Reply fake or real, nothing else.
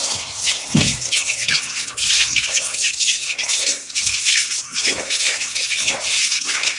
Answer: fake